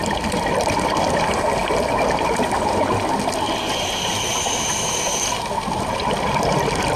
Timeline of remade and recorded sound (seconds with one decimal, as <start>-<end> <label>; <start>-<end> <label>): 0.0-7.0 recorded

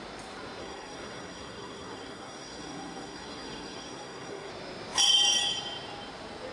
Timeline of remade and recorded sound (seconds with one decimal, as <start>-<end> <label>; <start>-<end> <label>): 0.0-0.6 recorded; 0.6-4.5 remade; 4.5-6.5 recorded